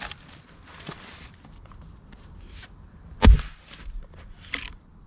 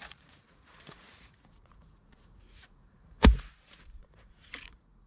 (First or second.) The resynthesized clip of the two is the second